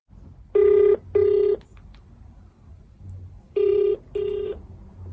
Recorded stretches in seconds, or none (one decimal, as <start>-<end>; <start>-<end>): 0.0-1.7; 3.9-5.1